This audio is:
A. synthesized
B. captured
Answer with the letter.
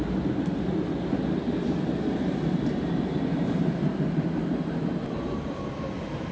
B